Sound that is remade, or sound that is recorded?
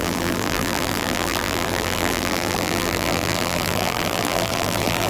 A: remade